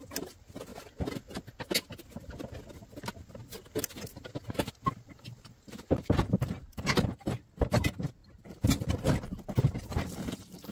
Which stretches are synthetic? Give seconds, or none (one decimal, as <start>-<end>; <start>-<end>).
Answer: 0.0-0.7; 4.7-10.7